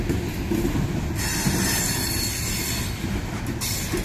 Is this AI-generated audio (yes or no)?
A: no